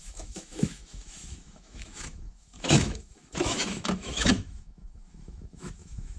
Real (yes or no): no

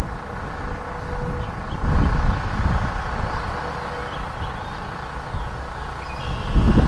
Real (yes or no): yes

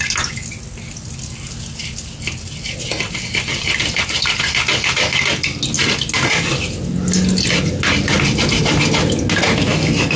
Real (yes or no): yes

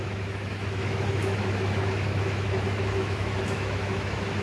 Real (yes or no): no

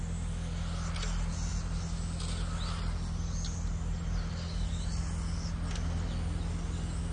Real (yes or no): yes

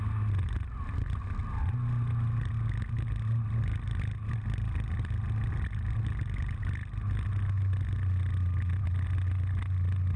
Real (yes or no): yes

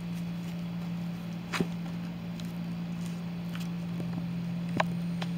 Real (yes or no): yes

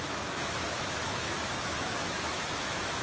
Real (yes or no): no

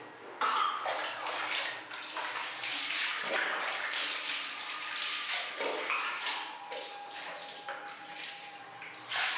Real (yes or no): yes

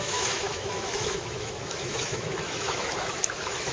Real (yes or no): no